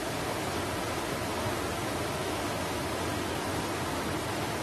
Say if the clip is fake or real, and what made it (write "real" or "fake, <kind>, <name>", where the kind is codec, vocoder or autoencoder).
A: real